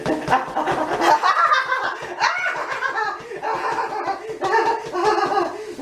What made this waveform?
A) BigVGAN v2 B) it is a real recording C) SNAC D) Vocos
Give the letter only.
B